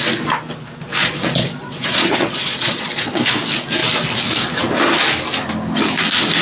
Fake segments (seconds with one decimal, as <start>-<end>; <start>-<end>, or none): 1.0-3.2